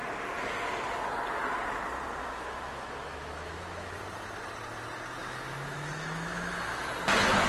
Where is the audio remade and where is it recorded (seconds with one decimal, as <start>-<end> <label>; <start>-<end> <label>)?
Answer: 0.0-2.2 recorded; 2.2-3.9 remade; 3.9-5.2 recorded; 5.2-6.9 remade; 6.9-7.5 recorded